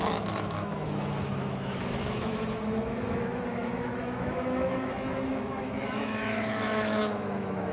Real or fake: fake